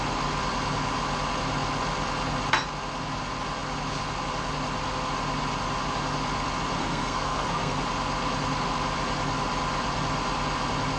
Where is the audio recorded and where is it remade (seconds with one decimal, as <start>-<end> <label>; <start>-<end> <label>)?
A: 0.0-6.8 recorded; 6.8-7.8 remade; 7.8-11.0 recorded